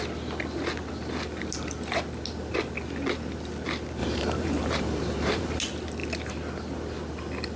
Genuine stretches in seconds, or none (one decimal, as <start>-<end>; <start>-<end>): 0.0-4.0; 5.6-7.6